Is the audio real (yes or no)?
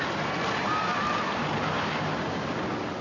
yes